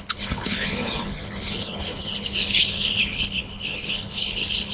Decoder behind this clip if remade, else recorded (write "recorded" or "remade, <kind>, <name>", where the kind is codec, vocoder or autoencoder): remade, codec, HILCodec